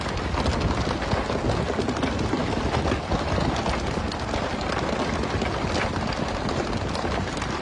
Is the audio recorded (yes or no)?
yes